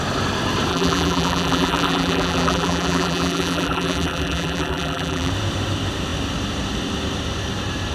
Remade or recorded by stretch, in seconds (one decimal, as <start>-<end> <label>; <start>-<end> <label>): 0.0-0.7 recorded; 0.7-5.3 remade; 5.3-7.9 recorded